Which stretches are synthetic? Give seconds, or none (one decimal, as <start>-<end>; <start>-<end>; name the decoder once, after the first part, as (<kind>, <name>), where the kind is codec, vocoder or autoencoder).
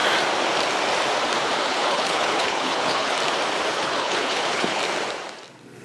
1.7-3.1 (codec, HILCodec); 3.7-4.8